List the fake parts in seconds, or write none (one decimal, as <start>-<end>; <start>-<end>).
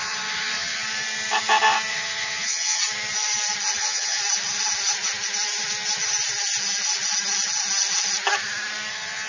0.0-0.8; 1.9-2.8; 3.8-4.2; 8.9-9.3